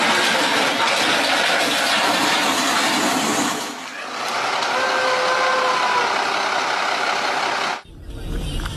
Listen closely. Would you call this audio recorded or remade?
recorded